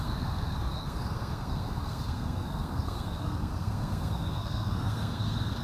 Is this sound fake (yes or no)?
yes